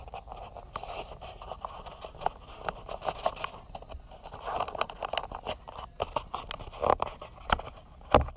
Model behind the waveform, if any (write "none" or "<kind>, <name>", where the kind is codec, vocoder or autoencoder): none